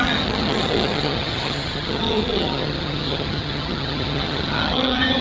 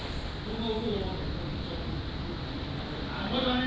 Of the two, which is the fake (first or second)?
first